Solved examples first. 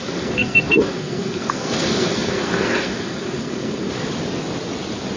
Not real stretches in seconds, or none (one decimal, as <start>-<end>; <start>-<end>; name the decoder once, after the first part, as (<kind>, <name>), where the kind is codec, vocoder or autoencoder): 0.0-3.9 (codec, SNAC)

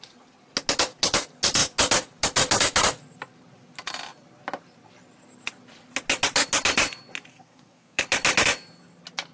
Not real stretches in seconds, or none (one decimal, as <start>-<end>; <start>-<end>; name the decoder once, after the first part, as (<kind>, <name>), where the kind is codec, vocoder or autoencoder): 7.3-8.0 (codec, SNAC)

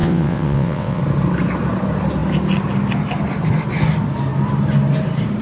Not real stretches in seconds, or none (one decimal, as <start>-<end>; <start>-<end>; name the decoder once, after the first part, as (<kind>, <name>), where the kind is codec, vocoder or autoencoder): 0.0-1.0 (vocoder, WaveNeXt)